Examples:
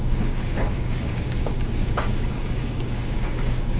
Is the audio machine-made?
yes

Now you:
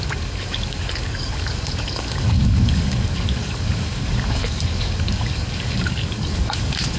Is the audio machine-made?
yes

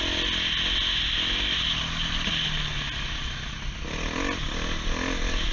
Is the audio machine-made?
no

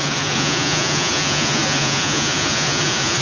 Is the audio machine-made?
yes